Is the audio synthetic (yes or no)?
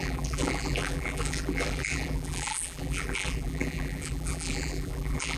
yes